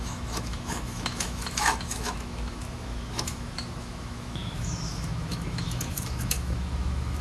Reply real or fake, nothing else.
fake